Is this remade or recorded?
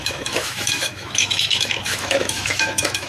remade